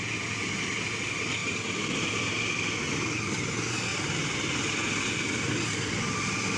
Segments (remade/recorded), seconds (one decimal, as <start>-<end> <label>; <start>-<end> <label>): 0.0-1.4 recorded; 1.4-2.2 remade; 2.2-6.6 recorded